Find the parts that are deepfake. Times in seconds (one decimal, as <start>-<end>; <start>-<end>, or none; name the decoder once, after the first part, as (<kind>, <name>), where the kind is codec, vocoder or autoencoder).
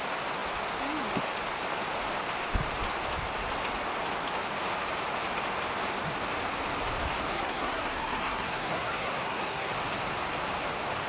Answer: 7.3-9.7 (codec, SNAC)